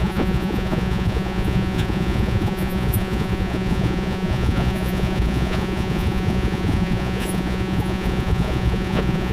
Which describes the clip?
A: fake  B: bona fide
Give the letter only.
A